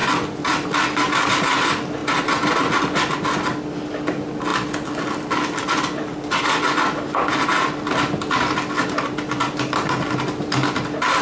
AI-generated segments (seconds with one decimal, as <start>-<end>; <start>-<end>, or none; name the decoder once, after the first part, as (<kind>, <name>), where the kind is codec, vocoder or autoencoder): 4.5-7.2 (vocoder, BigVGAN v2)